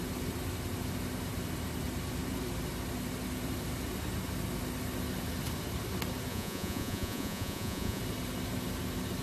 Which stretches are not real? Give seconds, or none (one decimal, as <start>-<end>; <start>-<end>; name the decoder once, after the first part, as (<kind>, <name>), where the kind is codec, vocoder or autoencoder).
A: 6.3-8.0 (vocoder, Vocos)